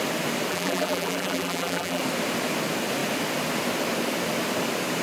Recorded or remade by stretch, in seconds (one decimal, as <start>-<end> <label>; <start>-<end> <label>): 0.0-0.5 recorded; 0.5-2.0 remade; 2.0-5.0 recorded